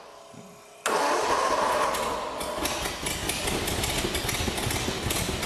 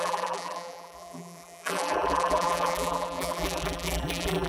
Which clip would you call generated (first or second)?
second